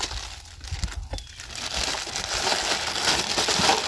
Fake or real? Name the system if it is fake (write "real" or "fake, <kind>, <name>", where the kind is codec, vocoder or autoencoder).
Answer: real